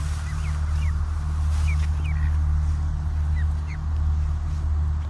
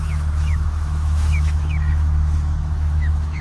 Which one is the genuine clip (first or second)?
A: first